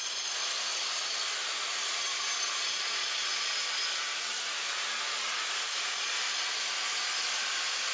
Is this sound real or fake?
real